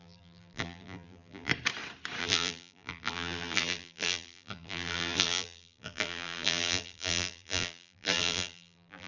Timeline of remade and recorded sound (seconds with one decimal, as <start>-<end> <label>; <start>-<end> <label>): 0.0-1.5 remade; 1.5-2.2 recorded; 2.2-9.1 remade

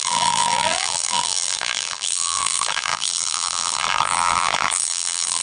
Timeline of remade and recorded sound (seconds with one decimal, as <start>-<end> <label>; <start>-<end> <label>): 0.0-5.4 remade